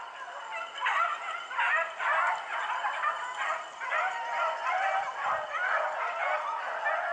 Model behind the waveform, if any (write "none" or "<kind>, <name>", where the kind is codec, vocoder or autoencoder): none